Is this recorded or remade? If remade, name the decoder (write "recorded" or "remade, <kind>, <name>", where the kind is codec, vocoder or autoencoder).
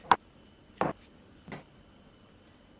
recorded